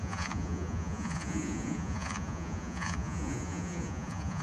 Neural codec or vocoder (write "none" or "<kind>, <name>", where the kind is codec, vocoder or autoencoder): vocoder, Vocos